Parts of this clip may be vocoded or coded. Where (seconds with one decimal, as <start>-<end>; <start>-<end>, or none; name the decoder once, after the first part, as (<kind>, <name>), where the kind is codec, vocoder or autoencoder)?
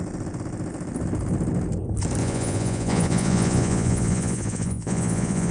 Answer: 2.2-5.5 (vocoder, Vocos)